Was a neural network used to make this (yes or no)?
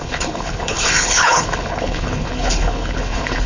yes